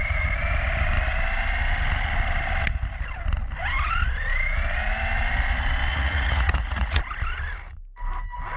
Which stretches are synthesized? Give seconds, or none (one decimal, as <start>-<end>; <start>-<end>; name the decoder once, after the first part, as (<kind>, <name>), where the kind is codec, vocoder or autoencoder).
5.9-7.0 (vocoder, Vocos)